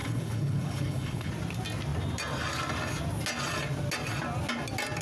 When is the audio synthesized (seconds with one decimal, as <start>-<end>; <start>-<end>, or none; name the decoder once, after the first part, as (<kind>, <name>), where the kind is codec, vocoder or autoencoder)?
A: 0.0-1.3 (codec, HILCodec)